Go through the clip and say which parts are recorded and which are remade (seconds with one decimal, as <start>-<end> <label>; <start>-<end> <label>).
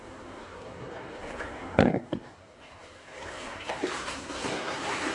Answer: 0.0-5.1 remade